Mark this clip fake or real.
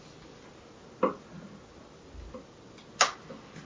real